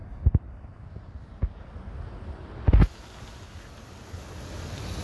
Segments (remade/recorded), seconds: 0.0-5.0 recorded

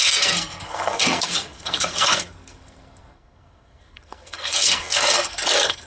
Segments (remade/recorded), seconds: 0.0-5.9 remade

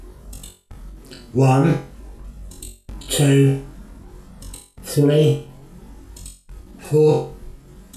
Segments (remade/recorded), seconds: 0.0-8.0 recorded

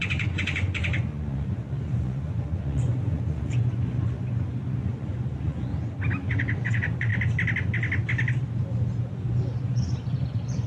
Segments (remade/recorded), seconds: 0.0-5.7 remade; 5.7-6.3 recorded; 6.3-7.1 remade; 7.1-9.6 recorded; 9.6-10.7 remade

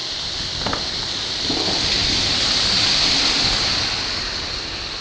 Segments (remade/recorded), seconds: 0.0-1.1 remade; 1.1-2.0 recorded; 2.0-5.0 remade